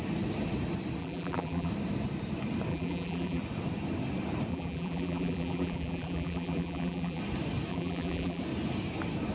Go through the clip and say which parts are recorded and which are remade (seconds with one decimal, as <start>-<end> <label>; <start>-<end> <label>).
0.0-1.0 recorded; 1.0-1.7 remade; 1.7-2.7 recorded; 2.7-3.4 remade; 3.4-4.5 recorded; 4.5-7.2 remade; 7.2-7.7 recorded; 7.7-8.4 remade; 8.4-9.3 recorded